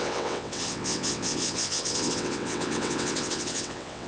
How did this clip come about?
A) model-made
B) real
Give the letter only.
A